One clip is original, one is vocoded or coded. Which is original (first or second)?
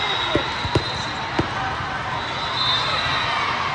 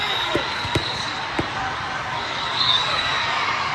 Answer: first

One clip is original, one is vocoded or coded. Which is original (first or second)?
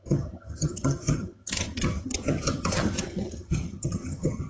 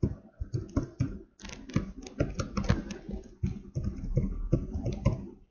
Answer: second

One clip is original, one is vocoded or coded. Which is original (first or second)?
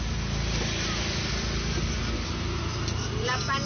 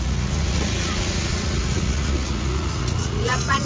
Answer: first